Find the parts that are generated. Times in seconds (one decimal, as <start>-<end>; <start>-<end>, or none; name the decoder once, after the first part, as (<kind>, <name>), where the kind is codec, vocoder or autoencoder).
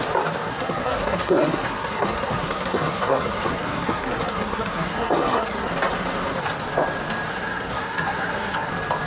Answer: 0.5-5.7 (codec, SNAC); 7.3-8.7